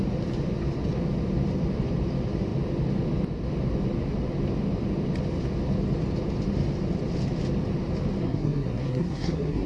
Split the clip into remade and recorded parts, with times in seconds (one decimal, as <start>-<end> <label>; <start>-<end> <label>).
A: 0.0-8.2 recorded; 8.2-9.7 remade